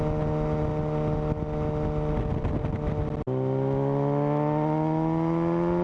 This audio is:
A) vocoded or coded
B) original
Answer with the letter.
B